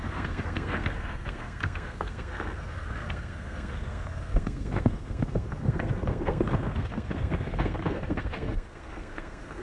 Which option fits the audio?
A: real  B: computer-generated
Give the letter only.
B